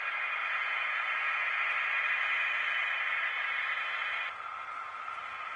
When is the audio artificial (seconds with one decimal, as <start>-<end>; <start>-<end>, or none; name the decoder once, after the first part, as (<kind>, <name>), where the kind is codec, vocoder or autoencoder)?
0.4-1.5 (vocoder, Vocos)